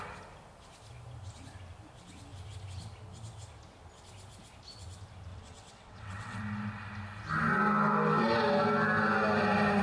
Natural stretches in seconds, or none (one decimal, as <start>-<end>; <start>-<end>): 0.0-5.3; 6.4-9.8